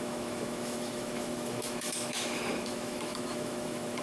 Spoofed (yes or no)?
yes